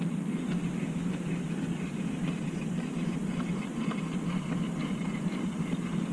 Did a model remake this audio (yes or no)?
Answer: no